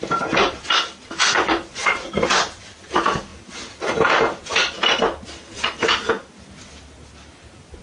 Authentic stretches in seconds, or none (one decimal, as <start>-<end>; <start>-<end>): 0.0-1.2; 1.8-7.8